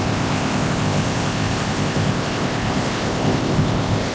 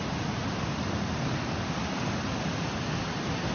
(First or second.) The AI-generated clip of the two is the first